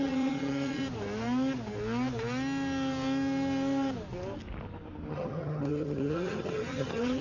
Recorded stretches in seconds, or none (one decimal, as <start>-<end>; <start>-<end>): 0.8-5.1